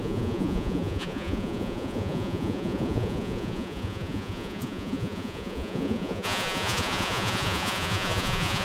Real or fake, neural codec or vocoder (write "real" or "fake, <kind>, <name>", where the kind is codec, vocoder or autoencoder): fake, vocoder, Vocos